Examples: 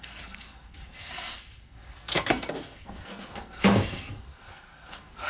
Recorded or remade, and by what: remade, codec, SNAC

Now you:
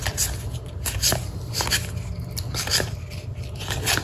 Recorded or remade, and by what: recorded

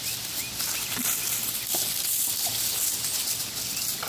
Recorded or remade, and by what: recorded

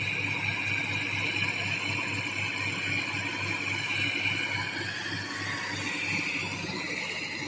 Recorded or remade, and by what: recorded